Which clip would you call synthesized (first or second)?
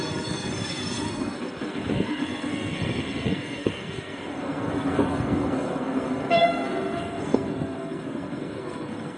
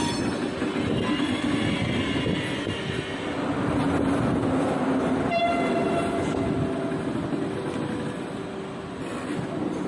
first